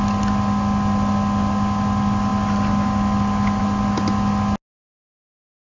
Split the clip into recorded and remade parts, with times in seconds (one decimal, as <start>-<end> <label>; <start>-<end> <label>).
0.0-5.6 recorded